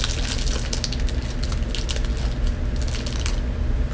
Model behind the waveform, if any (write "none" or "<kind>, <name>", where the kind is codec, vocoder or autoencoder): none